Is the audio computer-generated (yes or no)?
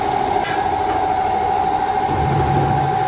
no